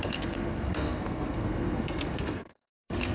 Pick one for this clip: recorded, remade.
remade